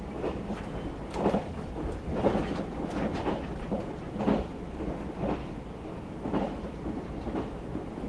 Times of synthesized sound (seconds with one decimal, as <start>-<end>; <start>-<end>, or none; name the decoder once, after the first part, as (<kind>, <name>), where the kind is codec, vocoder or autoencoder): 5.4-8.1 (vocoder, BigVGAN v2)